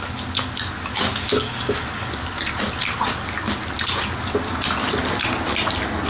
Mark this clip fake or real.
real